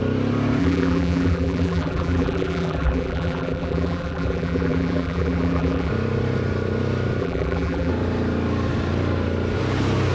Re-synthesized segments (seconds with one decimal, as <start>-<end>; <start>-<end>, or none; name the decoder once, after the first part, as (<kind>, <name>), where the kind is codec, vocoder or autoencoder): 0.6-5.9 (vocoder, BigVGAN v2); 7.2-7.9